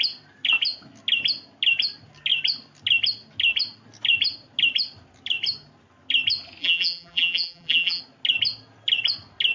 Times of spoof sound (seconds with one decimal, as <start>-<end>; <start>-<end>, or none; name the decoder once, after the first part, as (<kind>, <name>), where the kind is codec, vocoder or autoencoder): 6.6-8.0 (vocoder, BigVGAN v2)

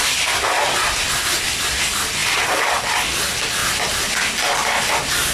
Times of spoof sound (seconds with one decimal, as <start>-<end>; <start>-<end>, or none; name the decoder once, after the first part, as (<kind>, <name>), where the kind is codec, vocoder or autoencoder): none

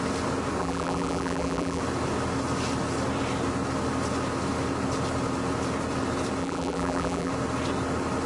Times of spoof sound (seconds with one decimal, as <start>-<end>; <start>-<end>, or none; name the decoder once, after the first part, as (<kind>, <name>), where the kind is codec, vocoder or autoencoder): 0.6-1.8 (vocoder, BigVGAN v2); 6.4-7.3

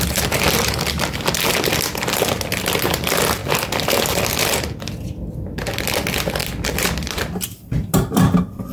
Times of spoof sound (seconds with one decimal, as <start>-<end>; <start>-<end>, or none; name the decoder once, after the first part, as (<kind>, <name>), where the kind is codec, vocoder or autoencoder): 6.4-8.7 (vocoder, BigVGAN v2)